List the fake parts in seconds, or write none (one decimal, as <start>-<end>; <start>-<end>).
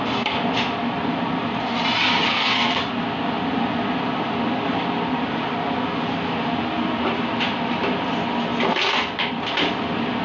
2.3-2.8